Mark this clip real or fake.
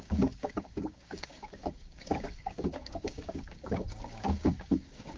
fake